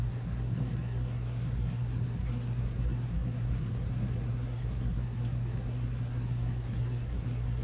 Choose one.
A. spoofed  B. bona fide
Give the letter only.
A